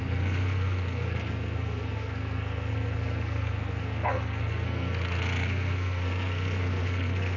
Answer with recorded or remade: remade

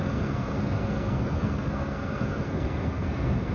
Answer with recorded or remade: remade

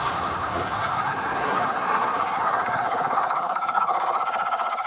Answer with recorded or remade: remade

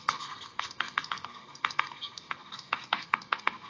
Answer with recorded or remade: remade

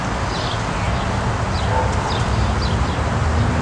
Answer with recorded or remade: recorded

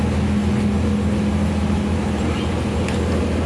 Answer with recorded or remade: recorded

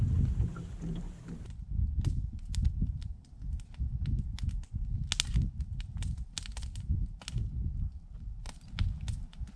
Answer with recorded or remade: recorded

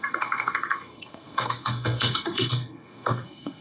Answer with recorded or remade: remade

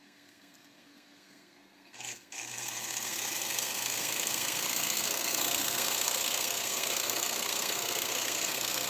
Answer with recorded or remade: remade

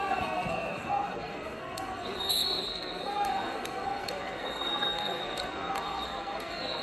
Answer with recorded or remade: remade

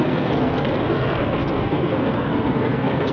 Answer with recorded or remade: remade